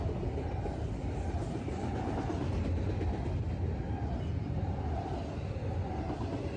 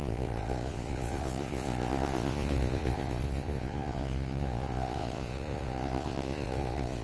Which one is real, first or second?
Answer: first